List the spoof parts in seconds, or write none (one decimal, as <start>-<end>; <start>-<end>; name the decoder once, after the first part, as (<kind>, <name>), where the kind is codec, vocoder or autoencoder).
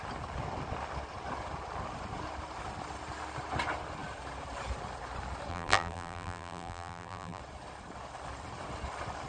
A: 5.5-7.4 (vocoder, BigVGAN v2)